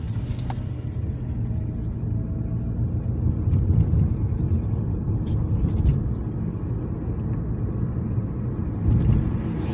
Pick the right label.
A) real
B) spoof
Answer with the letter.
A